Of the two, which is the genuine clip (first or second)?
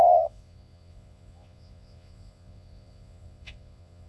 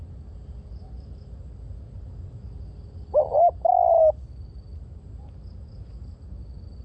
second